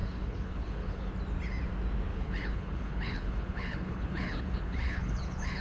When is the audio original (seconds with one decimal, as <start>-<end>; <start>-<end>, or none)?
1.1-2.1